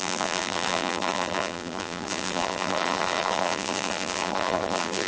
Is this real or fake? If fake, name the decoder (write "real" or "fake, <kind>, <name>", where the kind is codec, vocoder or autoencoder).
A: fake, vocoder, BigVGAN v2